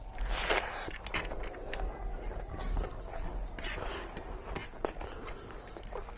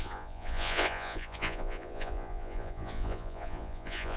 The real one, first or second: first